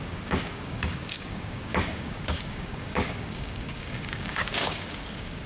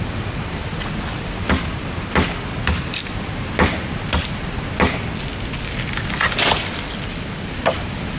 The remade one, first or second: first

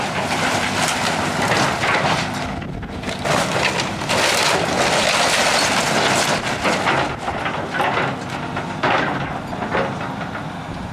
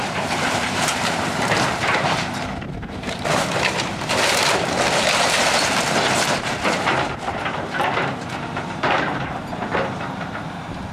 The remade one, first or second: second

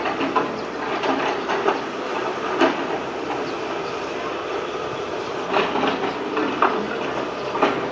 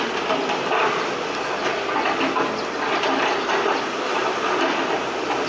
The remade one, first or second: first